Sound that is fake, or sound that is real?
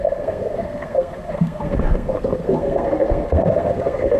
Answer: fake